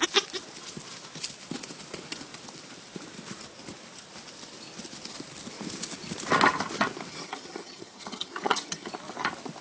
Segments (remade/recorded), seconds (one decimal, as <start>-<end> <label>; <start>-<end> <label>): 0.0-7.1 recorded; 7.1-8.9 remade; 8.9-9.6 recorded